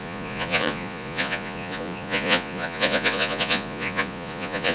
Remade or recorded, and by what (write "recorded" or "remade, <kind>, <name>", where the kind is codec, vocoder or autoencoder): remade, vocoder, Vocos